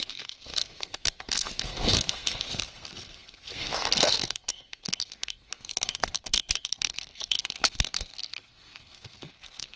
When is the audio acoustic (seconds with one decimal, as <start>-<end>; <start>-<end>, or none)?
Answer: none